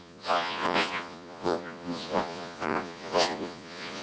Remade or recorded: remade